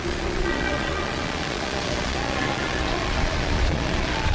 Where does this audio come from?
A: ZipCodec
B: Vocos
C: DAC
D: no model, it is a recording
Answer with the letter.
B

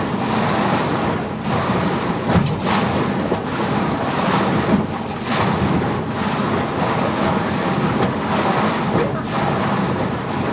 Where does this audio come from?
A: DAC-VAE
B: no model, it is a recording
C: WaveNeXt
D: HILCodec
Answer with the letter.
B